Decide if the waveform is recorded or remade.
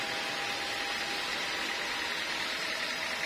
recorded